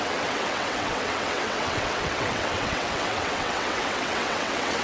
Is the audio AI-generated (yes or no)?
yes